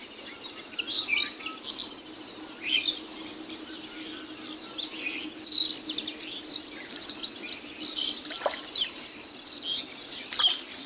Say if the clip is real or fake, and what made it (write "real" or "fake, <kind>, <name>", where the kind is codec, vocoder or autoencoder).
real